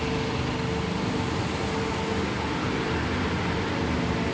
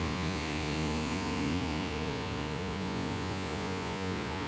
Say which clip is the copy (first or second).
second